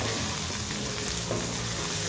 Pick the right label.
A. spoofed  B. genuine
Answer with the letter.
B